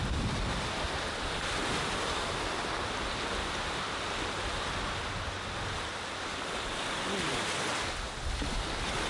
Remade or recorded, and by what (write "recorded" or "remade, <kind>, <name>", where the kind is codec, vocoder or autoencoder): recorded